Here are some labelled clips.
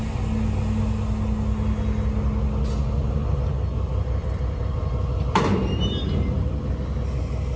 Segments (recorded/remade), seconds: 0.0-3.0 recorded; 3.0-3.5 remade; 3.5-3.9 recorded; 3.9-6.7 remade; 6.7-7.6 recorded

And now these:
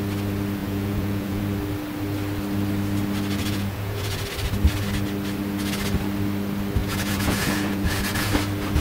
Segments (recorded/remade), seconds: 0.0-0.6 recorded; 0.6-1.4 remade; 1.4-3.4 recorded; 3.4-4.2 remade; 4.2-6.8 recorded; 6.8-8.3 remade; 8.3-8.8 recorded

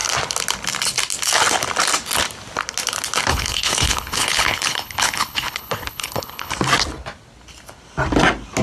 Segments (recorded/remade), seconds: 0.0-3.3 recorded; 3.3-6.5 remade; 6.5-8.6 recorded

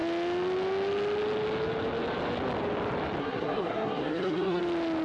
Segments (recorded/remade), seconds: 0.0-3.2 recorded; 3.2-4.6 remade; 4.6-5.0 recorded